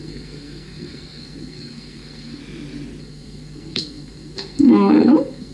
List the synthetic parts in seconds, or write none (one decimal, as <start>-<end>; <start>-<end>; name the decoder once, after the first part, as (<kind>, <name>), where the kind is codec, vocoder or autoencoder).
0.0-2.4 (codec, SNAC); 3.0-5.5